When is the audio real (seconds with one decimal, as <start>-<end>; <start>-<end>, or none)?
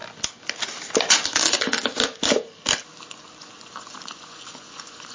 0.0-3.1